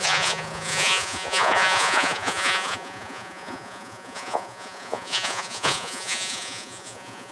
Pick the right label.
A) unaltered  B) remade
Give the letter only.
B